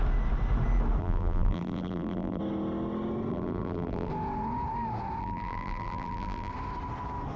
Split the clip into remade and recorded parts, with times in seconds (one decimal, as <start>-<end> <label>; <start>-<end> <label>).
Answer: 0.0-1.0 recorded; 1.0-2.4 remade; 2.4-3.3 recorded; 3.3-4.1 remade; 4.1-5.2 recorded; 5.2-6.5 remade; 6.5-7.4 recorded